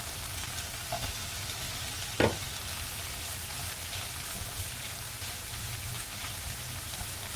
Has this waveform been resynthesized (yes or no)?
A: no